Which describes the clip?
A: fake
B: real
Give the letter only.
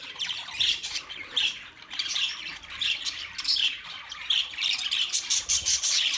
A